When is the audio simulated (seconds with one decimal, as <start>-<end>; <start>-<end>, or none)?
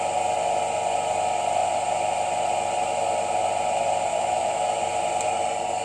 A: 4.1-4.8